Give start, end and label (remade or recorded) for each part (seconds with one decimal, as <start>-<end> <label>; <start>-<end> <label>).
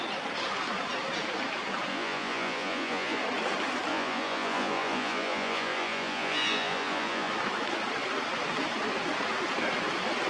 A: 0.0-1.9 recorded; 1.9-3.2 remade; 3.2-3.9 recorded; 3.9-7.3 remade; 7.3-10.3 recorded